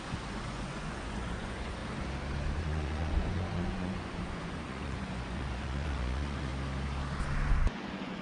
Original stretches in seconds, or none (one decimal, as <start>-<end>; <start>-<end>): 1.8-2.6; 6.5-7.6